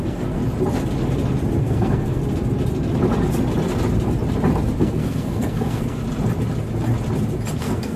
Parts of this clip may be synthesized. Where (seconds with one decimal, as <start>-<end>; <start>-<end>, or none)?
0.0-0.4; 1.6-2.2; 4.8-6.0; 7.5-8.0